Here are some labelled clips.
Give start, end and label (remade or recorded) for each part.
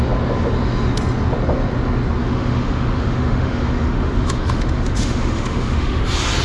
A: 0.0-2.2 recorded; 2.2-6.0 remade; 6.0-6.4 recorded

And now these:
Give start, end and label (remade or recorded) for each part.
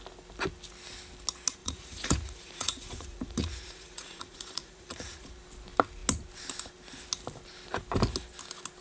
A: 0.0-1.6 recorded; 1.6-5.3 remade; 5.3-8.8 recorded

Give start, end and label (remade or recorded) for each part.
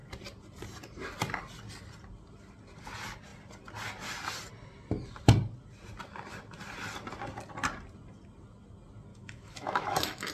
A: 0.0-9.1 recorded; 9.1-10.3 remade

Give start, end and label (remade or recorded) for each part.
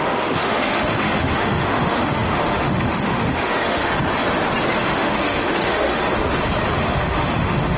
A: 0.0-3.9 remade; 3.9-4.8 recorded; 4.8-6.0 remade; 6.0-6.7 recorded; 6.7-7.8 remade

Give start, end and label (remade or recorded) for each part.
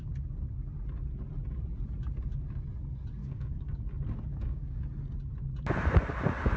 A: 0.0-3.2 recorded; 3.2-3.8 remade; 3.8-4.3 recorded; 4.3-4.8 remade; 4.8-6.6 recorded